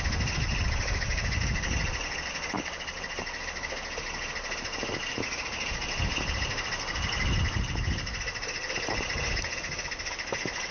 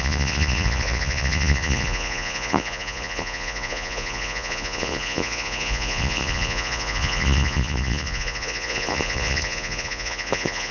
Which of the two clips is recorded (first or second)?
first